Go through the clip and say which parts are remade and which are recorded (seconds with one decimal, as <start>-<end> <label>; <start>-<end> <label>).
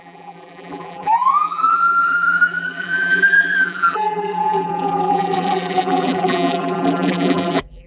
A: 0.0-7.9 remade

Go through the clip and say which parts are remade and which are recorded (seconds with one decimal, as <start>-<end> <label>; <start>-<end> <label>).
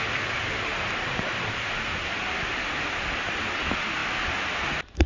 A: 0.0-5.1 recorded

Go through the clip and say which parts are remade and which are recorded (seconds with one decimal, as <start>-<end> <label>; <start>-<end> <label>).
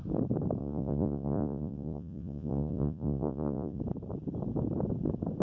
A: 0.0-0.6 recorded; 0.6-3.8 remade; 3.8-5.4 recorded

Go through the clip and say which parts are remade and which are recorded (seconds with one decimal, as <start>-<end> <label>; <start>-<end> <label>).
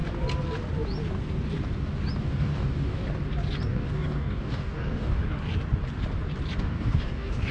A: 0.0-2.2 recorded; 2.2-3.0 remade; 3.0-3.7 recorded; 3.7-5.2 remade; 5.2-6.6 recorded; 6.6-7.5 remade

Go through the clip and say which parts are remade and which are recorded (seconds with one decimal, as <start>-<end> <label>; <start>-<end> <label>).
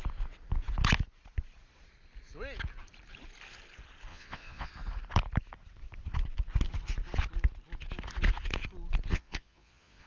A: 0.0-4.1 recorded; 4.1-4.7 remade; 4.7-9.1 recorded; 9.1-10.1 remade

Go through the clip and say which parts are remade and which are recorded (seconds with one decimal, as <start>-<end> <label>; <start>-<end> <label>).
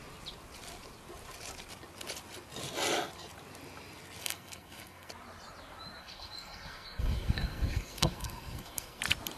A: 0.0-4.2 recorded; 4.2-5.1 remade; 5.1-6.0 recorded; 6.0-9.0 remade; 9.0-9.4 recorded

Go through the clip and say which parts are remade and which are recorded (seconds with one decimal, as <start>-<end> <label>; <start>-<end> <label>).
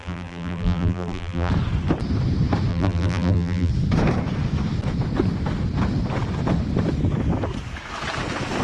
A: 0.0-1.5 remade; 1.5-2.7 recorded; 2.7-3.7 remade; 3.7-8.6 recorded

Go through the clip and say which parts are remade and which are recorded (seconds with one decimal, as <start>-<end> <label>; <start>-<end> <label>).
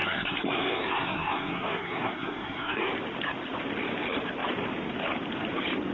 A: 0.0-2.9 remade; 2.9-5.9 recorded